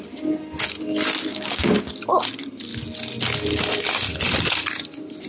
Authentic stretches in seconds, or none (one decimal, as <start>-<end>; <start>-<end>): 0.0-1.3; 1.9-5.3